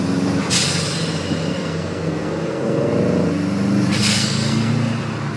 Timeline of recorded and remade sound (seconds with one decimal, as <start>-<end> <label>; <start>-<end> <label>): 0.0-1.5 recorded; 1.5-2.9 remade; 2.9-4.0 recorded; 4.0-4.7 remade; 4.7-5.4 recorded